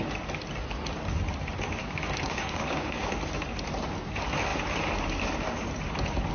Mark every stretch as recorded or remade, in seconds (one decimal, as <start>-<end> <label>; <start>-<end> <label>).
0.0-1.8 recorded; 1.8-3.1 remade; 3.1-6.3 recorded